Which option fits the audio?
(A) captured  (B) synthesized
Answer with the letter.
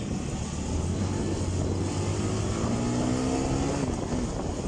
A